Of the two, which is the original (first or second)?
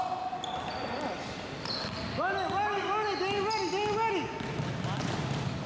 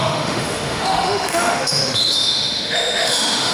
first